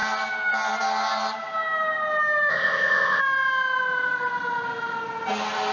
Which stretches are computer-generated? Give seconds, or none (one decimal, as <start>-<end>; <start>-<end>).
2.5-3.2